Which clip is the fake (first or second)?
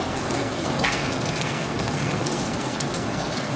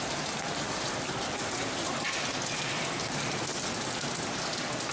first